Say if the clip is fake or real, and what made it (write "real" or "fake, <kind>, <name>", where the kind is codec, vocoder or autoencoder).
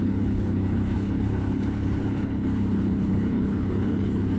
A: fake, codec, HILCodec